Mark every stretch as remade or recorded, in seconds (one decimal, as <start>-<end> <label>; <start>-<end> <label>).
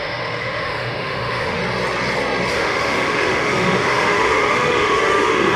0.0-1.6 remade; 1.6-2.5 recorded; 2.5-5.6 remade